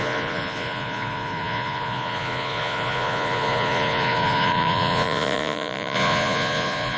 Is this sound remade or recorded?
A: remade